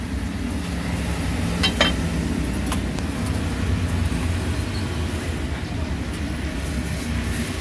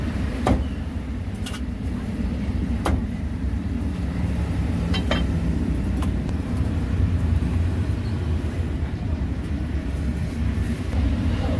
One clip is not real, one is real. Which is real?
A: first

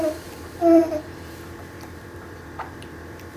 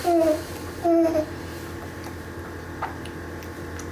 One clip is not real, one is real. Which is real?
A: second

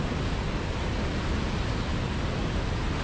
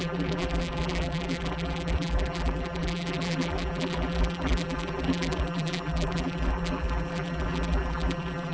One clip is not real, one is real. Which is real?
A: first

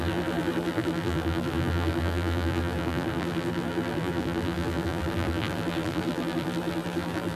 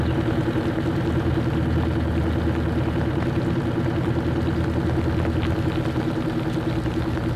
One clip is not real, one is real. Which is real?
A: second